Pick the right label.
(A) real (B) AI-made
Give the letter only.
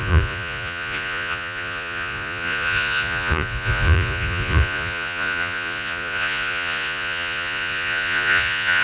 B